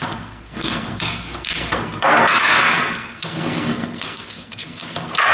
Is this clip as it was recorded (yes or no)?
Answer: no